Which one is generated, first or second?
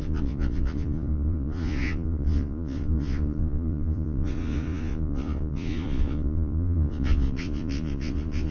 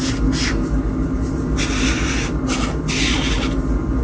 first